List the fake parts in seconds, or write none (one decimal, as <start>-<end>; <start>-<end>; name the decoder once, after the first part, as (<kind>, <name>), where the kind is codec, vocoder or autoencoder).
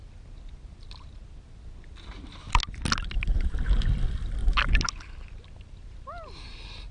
none